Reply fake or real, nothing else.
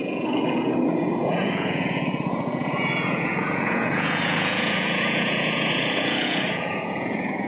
fake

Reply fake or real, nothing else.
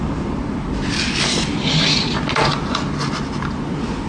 real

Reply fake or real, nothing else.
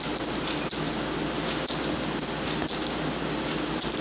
real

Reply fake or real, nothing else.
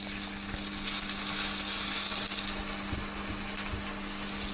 real